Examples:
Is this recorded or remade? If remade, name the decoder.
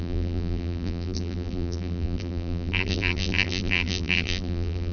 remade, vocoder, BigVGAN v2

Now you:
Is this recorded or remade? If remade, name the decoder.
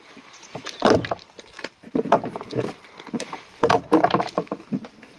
recorded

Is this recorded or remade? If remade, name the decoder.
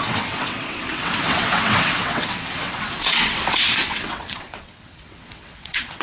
remade, vocoder, WaveNeXt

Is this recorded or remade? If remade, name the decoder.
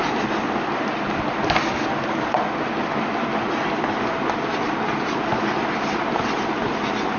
recorded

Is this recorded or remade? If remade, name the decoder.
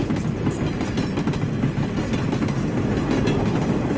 recorded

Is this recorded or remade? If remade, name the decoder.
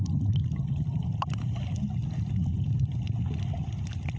recorded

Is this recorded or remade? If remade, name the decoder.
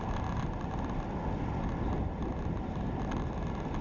recorded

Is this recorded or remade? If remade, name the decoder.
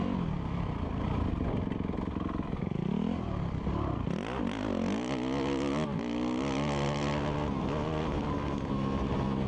recorded